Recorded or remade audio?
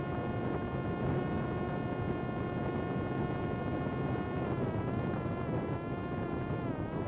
recorded